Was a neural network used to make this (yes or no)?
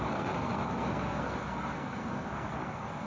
yes